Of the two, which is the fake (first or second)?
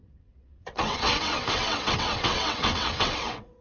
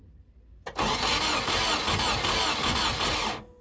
first